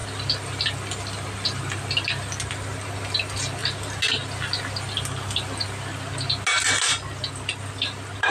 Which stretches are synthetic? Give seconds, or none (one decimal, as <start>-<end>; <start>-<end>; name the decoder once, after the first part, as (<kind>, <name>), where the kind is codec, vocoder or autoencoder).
none